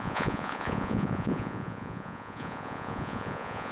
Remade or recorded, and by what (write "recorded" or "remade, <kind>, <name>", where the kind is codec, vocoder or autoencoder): remade, vocoder, Vocos